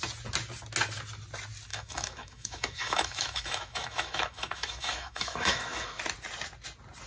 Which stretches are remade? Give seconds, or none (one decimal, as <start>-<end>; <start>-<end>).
1.7-6.0